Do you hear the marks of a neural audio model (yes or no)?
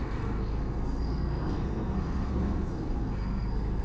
yes